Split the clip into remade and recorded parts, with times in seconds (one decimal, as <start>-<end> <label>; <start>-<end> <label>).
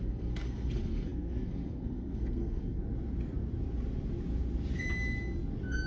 0.0-2.8 remade; 2.8-5.9 recorded